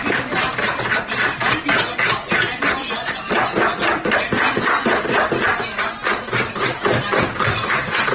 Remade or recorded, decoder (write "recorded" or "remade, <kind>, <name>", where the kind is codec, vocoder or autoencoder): recorded